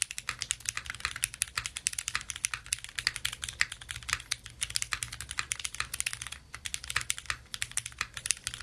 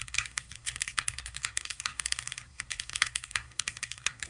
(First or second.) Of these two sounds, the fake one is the second